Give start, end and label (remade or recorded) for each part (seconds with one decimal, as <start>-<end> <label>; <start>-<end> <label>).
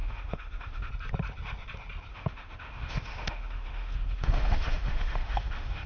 0.0-0.9 remade; 0.9-2.1 recorded; 2.1-5.9 remade